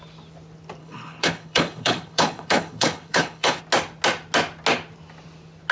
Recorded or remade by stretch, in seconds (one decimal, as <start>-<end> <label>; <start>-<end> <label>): 0.0-0.8 recorded; 0.8-3.6 remade; 3.6-5.7 recorded